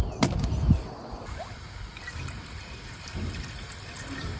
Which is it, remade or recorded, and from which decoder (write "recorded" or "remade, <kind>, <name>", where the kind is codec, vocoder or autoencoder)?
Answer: recorded